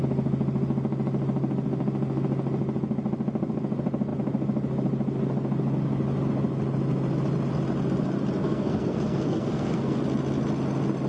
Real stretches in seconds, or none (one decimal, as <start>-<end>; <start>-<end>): 0.0-8.4; 10.0-11.1